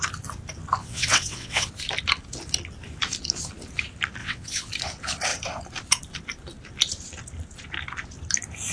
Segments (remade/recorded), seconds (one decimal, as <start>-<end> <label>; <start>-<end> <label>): 0.0-0.8 recorded; 0.8-1.7 remade; 1.7-4.2 recorded; 4.2-4.7 remade; 4.7-8.7 recorded